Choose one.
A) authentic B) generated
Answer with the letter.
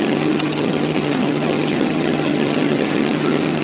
B